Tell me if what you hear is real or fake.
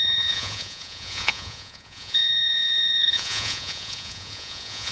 fake